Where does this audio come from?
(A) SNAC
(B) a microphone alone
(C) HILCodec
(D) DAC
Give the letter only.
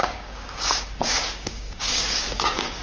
D